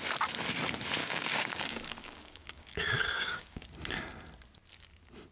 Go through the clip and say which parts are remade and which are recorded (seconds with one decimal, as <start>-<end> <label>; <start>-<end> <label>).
0.0-1.0 recorded; 1.0-3.7 remade; 3.7-5.3 recorded